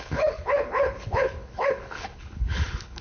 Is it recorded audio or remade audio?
remade